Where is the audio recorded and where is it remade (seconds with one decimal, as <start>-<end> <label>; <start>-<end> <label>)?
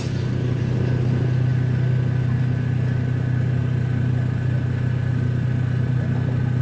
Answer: 0.0-6.6 recorded